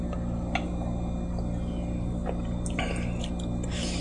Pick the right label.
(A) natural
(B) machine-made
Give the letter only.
A